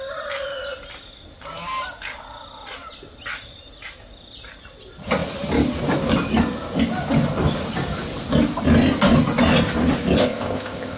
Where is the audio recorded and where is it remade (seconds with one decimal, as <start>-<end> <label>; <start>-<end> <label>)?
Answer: 0.0-10.2 recorded; 10.2-11.0 remade